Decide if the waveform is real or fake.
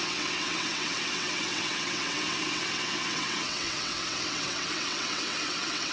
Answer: fake